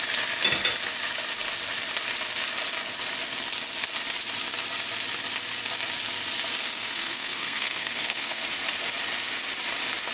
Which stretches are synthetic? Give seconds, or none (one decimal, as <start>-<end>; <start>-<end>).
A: 6.6-8.4